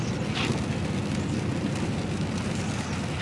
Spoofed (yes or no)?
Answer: no